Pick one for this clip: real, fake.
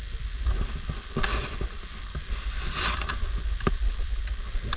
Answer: real